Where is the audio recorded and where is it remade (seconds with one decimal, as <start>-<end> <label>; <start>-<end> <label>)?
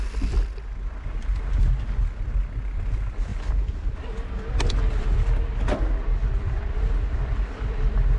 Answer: 0.0-8.2 recorded